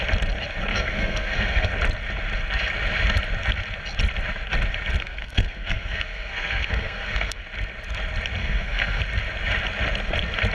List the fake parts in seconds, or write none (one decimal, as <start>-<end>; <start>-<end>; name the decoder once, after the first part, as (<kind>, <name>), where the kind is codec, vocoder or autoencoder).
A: 0.7-1.7 (codec, SNAC); 5.0-7.4; 8.4-9.0